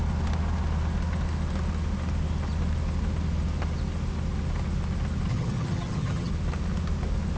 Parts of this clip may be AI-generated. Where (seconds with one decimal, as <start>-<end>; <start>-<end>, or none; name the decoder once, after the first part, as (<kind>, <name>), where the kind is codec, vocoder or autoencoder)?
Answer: 5.3-6.3 (vocoder, HiFi-GAN)